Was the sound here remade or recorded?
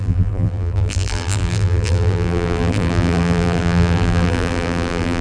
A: remade